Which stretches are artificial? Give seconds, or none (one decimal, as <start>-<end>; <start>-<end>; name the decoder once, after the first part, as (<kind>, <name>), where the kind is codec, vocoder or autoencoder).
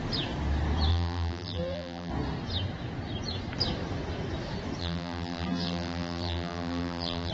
0.9-2.1 (vocoder, BigVGAN v2); 4.8-7.3